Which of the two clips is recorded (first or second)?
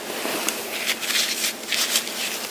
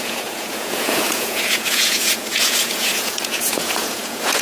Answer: first